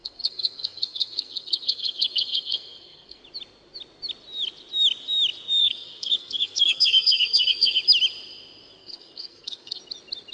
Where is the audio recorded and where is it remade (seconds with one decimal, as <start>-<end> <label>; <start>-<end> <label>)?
0.0-3.2 remade; 3.2-5.6 recorded; 5.6-7.8 remade; 7.8-8.8 recorded; 8.8-9.8 remade; 9.8-10.3 recorded